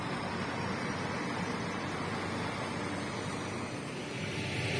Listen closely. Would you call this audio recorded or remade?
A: recorded